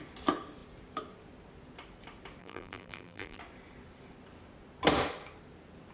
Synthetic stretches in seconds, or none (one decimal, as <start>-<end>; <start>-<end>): 2.4-3.4